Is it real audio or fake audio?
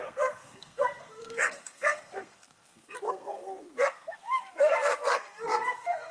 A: fake